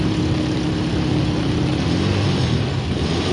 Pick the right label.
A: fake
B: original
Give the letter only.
B